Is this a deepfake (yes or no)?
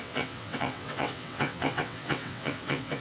yes